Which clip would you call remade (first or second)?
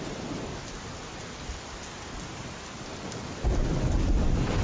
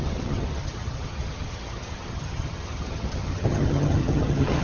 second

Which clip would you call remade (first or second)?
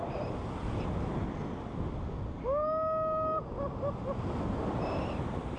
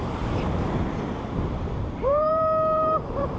second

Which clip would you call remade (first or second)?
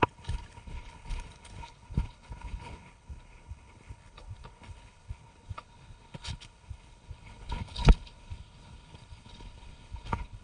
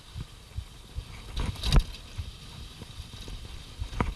first